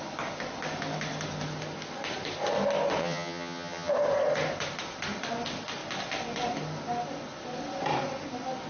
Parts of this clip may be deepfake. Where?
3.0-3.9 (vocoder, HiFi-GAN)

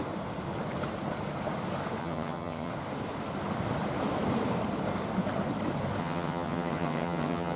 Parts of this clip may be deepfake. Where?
2.0-2.7 (vocoder, HiFi-GAN); 6.0-7.6

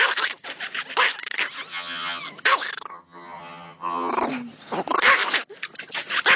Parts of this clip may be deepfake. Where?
1.7-2.2 (vocoder, HiFi-GAN); 2.9-4.1

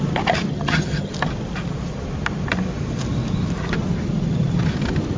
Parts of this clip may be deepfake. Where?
0.5-1.1 (vocoder, HiFi-GAN)